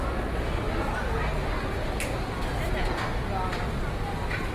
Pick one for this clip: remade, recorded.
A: recorded